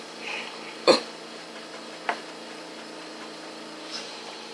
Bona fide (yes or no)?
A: no